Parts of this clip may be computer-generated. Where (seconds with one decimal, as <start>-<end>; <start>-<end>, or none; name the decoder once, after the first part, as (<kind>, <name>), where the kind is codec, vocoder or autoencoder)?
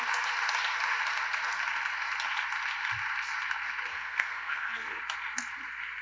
3.9-5.0 (codec, SNAC)